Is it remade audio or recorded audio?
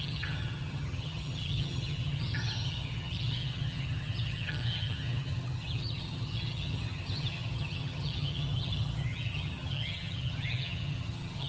remade